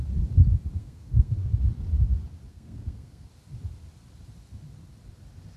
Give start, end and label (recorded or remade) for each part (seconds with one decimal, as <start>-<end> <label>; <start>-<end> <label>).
0.0-0.8 recorded; 0.8-1.5 remade; 1.5-2.5 recorded; 2.5-3.3 remade; 3.3-5.6 recorded

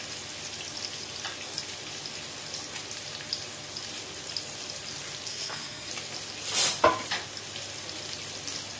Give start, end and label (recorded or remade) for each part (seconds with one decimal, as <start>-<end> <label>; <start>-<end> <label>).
0.0-5.3 recorded; 5.3-5.9 remade; 5.9-8.8 recorded

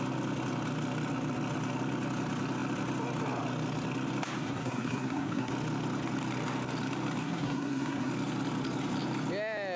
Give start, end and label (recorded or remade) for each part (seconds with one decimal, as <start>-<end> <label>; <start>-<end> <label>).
0.0-4.4 recorded; 4.4-5.5 remade; 5.5-7.2 recorded; 7.2-8.1 remade; 8.1-9.8 recorded

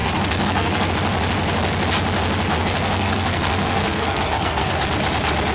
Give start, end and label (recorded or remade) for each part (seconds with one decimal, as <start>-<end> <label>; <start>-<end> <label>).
0.0-0.9 remade; 0.9-2.5 recorded; 2.5-4.7 remade; 4.7-5.5 recorded

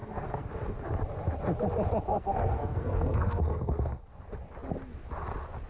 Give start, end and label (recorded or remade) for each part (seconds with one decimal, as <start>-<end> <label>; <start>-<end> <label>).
0.0-0.5 remade; 0.5-2.1 recorded; 2.1-4.0 remade; 4.0-5.7 recorded

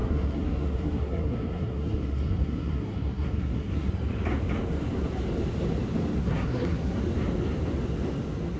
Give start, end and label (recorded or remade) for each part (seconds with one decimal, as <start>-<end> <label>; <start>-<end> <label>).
0.0-3.9 remade; 3.9-6.2 recorded; 6.2-7.0 remade; 7.0-8.6 recorded

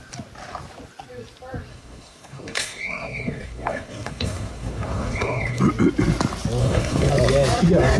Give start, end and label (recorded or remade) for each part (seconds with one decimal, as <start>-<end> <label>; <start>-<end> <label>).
0.0-1.7 recorded; 1.7-5.6 remade; 5.6-6.6 recorded; 6.6-7.1 remade; 7.1-8.0 recorded